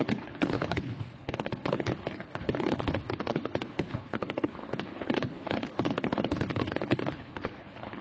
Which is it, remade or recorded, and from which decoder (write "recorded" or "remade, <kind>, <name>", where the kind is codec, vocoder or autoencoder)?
remade, codec, HILCodec